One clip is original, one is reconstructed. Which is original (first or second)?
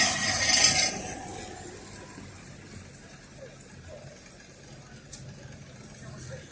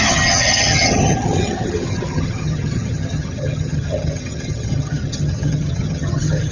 first